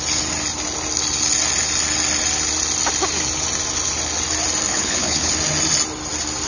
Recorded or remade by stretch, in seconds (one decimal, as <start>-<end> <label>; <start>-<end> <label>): 0.0-4.7 recorded; 4.7-5.3 remade; 5.3-6.5 recorded